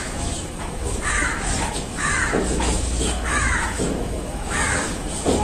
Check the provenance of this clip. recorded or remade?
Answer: remade